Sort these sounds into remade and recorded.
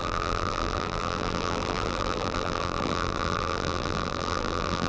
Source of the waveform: remade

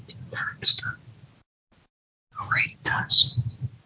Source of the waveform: recorded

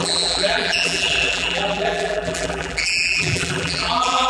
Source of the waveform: remade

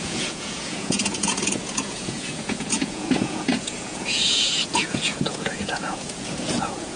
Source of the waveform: remade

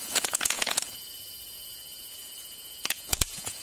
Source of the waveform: remade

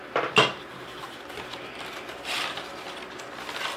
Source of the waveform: recorded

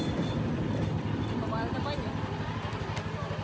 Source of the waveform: recorded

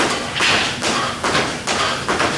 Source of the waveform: recorded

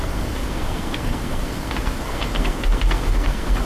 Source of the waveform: remade